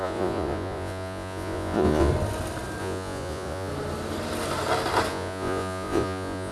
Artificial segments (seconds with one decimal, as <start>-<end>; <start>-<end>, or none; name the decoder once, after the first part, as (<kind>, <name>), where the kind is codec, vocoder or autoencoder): 0.0-2.1 (vocoder, Vocos); 2.8-3.7; 5.1-6.5